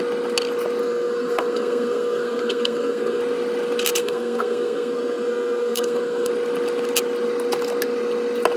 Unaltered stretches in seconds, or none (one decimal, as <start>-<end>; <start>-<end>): 0.0-0.8; 3.2-4.0; 6.3-8.6